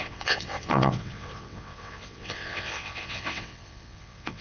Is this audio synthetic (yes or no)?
yes